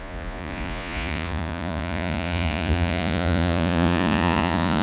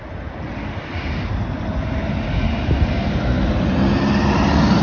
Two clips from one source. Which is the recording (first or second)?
second